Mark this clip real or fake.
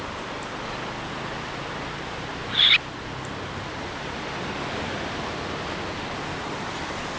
real